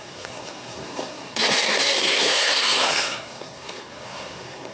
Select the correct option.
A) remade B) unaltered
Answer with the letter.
A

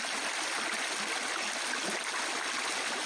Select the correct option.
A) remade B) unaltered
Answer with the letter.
B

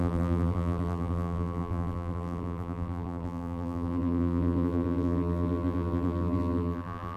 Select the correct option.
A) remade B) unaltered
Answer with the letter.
A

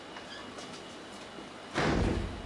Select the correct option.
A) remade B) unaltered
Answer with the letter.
B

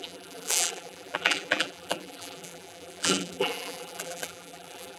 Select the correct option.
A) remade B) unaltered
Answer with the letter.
A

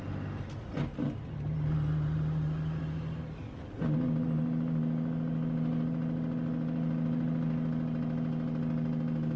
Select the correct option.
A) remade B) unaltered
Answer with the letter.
B